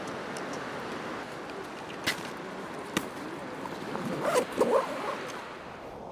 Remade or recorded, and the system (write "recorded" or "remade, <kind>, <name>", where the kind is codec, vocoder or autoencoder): recorded